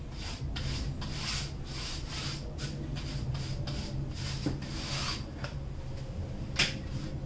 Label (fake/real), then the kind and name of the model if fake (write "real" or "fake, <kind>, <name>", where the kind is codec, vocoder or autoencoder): real